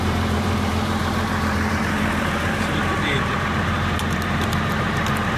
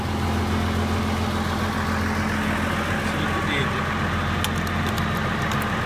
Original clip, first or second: second